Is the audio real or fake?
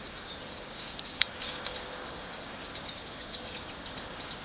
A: fake